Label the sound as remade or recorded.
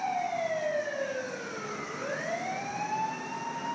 recorded